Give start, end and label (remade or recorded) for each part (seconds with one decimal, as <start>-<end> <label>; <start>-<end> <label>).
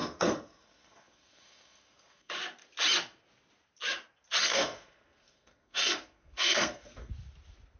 0.0-2.3 remade; 2.3-4.4 recorded; 4.4-7.1 remade; 7.1-7.8 recorded